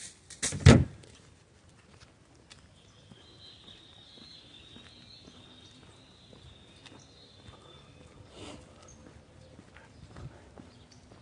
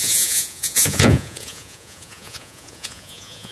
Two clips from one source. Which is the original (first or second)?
first